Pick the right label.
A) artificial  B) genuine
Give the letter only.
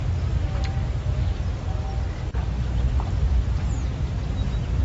B